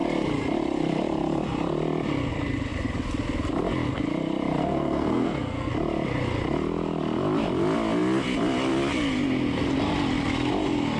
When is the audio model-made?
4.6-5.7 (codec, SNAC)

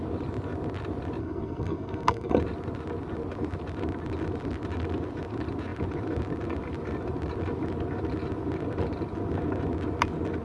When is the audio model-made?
1.2-2.4 (codec, SNAC)

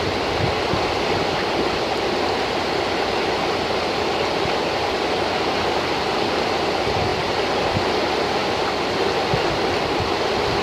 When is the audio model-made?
none

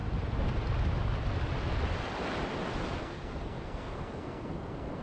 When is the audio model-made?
3.0-5.0 (codec, SNAC)

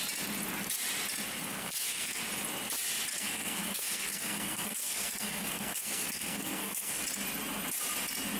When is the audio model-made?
1.5-2.2 (codec, SNAC); 3.1-7.0

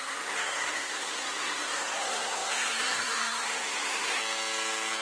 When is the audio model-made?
0.0-4.2 (codec, SNAC)

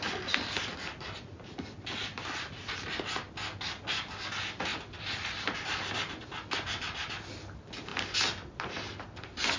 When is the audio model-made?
none